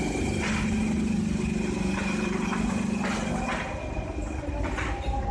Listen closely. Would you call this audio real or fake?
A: real